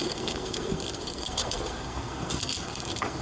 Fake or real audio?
fake